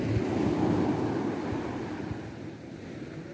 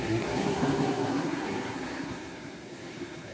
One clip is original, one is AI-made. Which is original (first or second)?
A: first